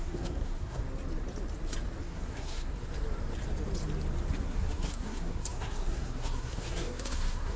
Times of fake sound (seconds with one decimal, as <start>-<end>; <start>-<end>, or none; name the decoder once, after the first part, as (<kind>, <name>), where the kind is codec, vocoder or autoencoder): 0.0-0.8 (codec, SNAC); 2.0-2.9; 4.4-7.6